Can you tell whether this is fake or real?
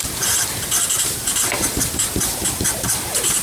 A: real